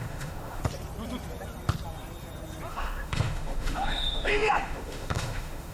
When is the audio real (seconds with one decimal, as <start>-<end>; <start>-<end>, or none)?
0.6-2.7